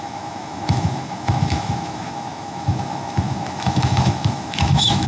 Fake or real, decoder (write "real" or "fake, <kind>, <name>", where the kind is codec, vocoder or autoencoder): fake, autoencoder, DAC-VAE